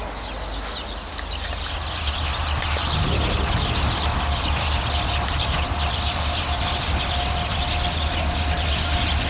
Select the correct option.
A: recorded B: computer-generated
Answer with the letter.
A